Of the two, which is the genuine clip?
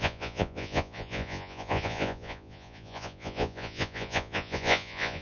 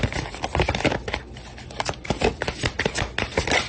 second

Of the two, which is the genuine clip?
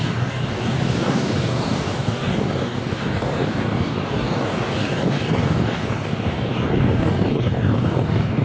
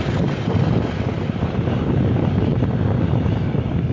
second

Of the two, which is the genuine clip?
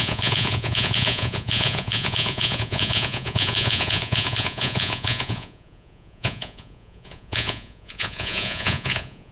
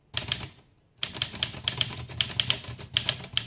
second